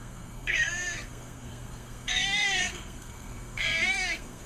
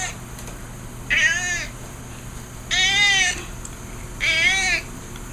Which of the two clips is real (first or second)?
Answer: second